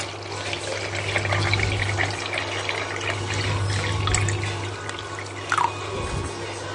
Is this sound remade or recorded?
recorded